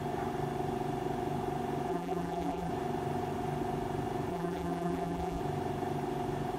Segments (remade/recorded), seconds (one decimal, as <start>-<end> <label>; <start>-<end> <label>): 0.0-1.9 recorded; 1.9-2.7 remade; 2.7-4.3 recorded; 4.3-5.4 remade; 5.4-6.6 recorded